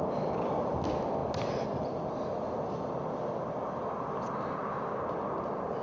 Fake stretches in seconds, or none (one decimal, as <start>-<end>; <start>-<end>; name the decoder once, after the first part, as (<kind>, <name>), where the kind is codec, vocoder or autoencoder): none